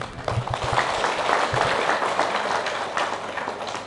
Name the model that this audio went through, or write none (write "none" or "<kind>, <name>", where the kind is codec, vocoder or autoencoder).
none